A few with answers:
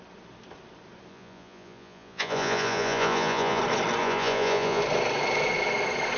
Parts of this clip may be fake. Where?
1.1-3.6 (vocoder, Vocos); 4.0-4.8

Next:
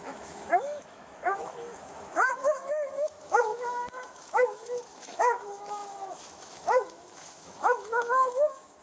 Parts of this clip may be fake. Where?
0.0-8.8 (autoencoder, DAC-VAE)

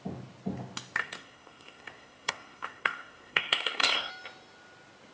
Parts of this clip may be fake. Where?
1.0-4.1 (codec, SNAC)

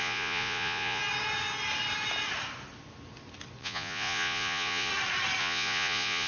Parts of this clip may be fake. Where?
0.0-1.0 (vocoder, Vocos); 3.6-4.9; 5.4-6.3